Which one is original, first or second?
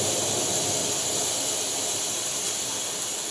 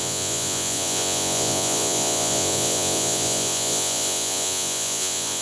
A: first